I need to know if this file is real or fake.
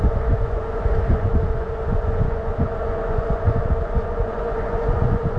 fake